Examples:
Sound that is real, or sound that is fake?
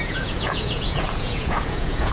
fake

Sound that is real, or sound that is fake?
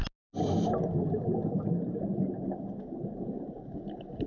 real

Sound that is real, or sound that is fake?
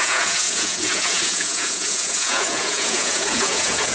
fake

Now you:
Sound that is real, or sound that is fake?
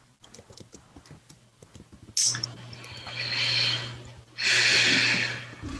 real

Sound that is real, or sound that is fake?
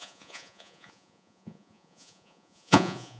fake